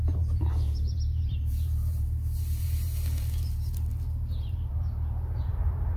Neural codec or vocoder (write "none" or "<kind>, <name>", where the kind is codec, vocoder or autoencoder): vocoder, BigVGAN v2